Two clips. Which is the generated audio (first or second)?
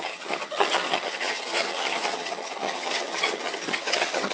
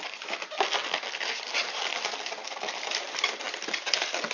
first